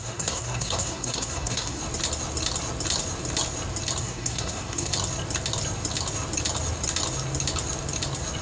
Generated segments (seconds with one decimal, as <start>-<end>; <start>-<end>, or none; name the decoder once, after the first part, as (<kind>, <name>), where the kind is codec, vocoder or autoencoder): 0.0-1.8 (codec, SNAC); 4.0-4.9

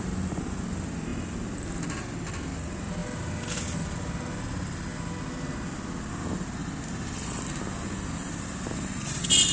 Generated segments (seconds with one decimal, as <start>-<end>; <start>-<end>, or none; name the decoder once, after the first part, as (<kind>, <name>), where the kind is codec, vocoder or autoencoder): none